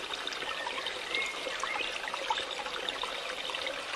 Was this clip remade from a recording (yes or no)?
no